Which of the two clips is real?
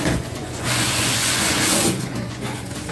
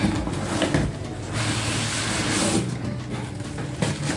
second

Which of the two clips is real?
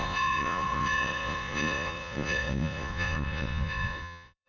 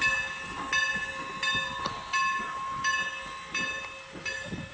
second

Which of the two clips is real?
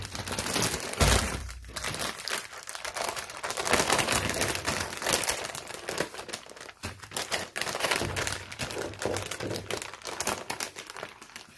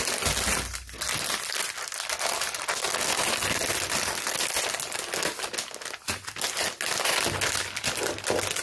second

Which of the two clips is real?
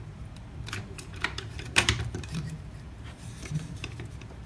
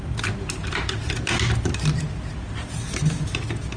second